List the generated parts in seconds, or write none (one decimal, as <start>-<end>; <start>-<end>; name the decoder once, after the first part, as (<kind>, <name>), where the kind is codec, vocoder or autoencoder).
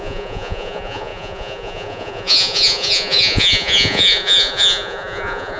0.0-5.6 (vocoder, Vocos)